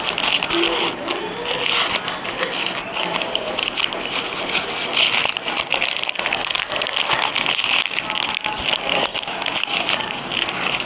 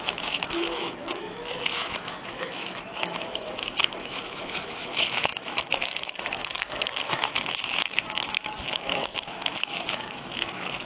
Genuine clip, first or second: first